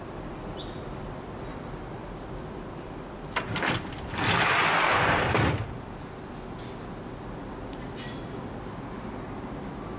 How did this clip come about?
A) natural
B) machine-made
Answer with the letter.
A